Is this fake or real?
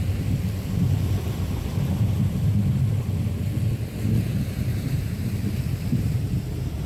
fake